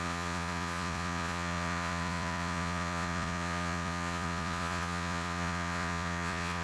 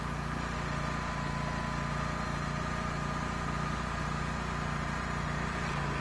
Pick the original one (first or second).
second